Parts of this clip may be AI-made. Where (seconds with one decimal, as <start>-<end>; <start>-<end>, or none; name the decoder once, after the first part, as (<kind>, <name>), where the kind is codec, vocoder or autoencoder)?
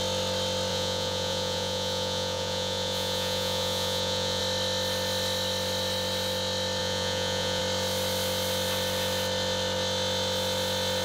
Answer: 0.7-4.4 (vocoder, Vocos); 6.8-7.6